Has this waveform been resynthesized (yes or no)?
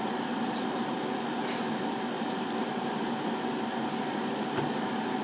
no